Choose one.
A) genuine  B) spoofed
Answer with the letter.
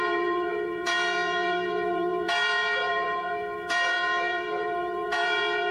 B